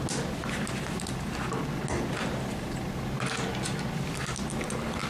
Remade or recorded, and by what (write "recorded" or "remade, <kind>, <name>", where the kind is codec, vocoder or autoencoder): recorded